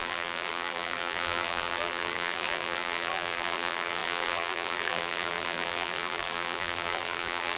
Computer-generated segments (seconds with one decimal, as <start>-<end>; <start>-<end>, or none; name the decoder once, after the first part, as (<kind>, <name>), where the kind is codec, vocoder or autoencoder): 0.0-7.6 (vocoder, BigVGAN v2)